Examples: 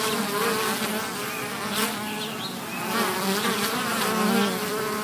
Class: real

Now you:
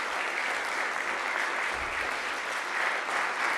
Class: real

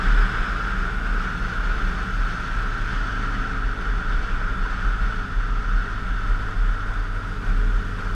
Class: real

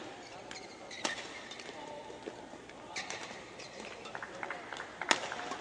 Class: real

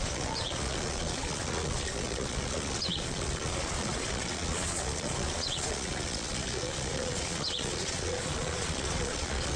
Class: fake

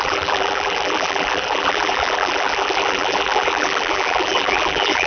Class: fake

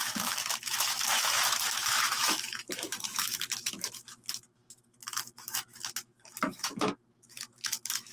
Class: fake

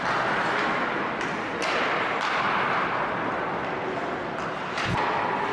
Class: real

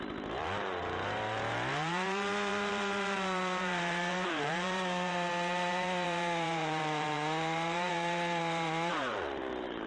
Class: fake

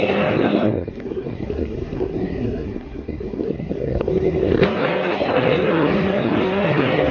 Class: fake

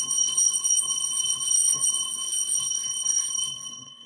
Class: fake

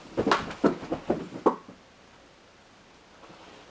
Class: real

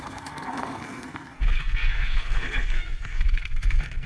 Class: fake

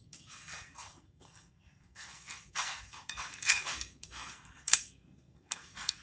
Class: fake